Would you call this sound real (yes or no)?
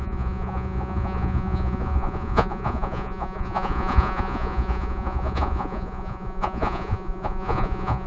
no